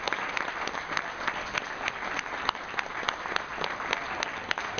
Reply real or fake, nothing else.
real